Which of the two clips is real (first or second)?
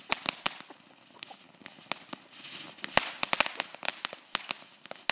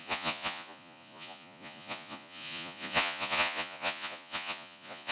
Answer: first